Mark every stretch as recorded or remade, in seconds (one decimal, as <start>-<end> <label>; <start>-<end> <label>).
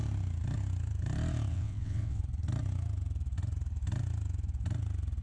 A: 0.0-1.5 recorded; 1.5-2.2 remade; 2.2-5.2 recorded